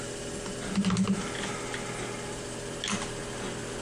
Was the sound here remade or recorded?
recorded